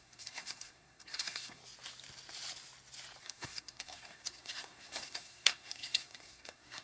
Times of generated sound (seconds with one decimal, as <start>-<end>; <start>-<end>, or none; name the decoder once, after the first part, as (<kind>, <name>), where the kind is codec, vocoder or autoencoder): 0.0-1.6 (codec, SNAC); 3.2-6.8